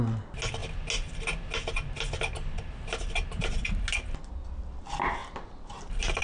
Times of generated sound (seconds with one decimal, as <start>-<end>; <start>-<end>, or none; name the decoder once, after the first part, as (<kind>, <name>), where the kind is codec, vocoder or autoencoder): none